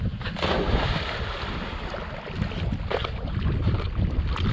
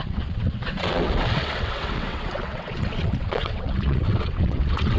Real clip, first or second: first